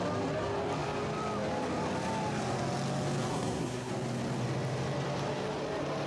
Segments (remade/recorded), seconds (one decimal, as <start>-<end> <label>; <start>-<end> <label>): 0.0-3.3 recorded; 3.3-3.9 remade; 3.9-6.1 recorded